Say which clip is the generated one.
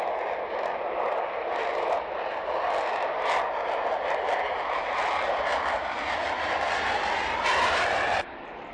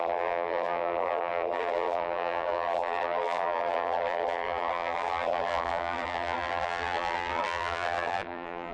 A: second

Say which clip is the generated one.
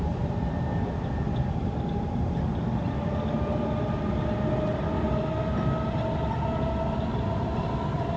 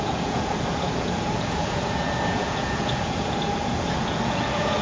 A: second